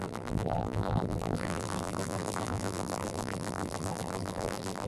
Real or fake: fake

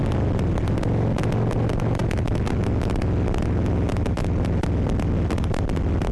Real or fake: real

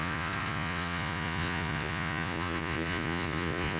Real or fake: fake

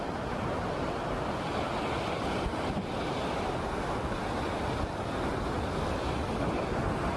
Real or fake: real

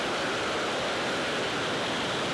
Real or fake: real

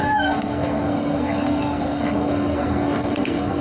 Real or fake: fake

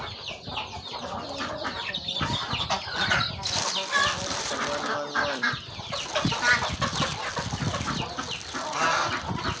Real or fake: real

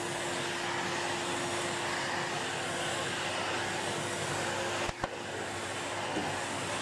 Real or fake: real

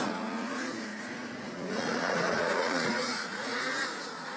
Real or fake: fake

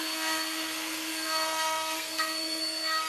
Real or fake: fake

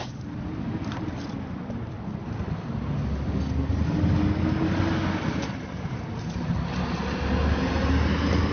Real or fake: real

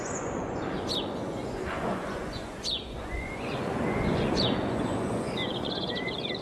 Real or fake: fake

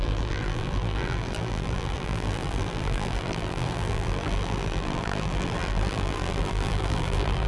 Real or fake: fake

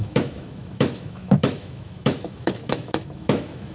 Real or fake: fake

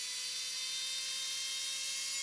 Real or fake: real